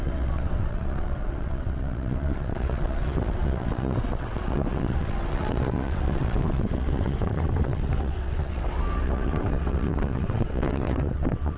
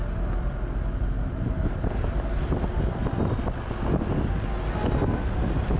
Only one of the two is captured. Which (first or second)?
second